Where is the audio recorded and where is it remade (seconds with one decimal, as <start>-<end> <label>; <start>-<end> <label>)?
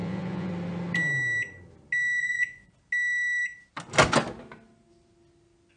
0.0-0.5 remade; 0.5-2.2 recorded; 2.2-2.7 remade; 2.7-5.8 recorded